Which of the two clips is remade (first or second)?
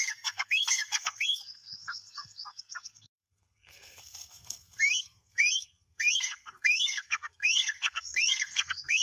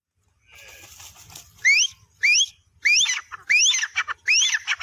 first